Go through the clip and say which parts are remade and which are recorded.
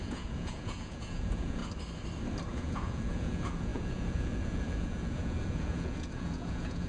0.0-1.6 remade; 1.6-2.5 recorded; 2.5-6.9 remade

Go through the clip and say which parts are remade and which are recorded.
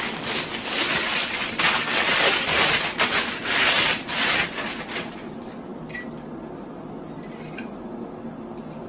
0.0-8.9 recorded